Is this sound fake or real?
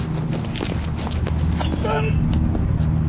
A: real